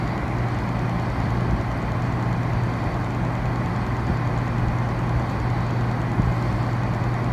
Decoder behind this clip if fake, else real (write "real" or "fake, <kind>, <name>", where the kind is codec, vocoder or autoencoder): real